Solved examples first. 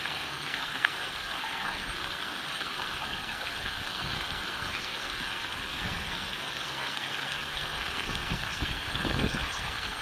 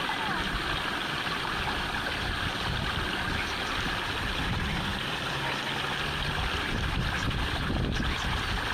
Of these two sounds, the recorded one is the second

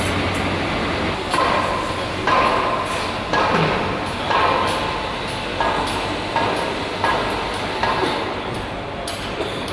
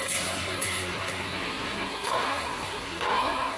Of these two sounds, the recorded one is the first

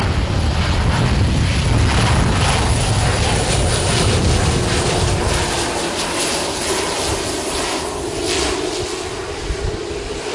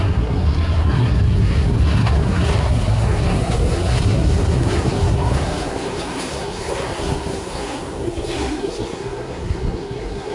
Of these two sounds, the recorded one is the first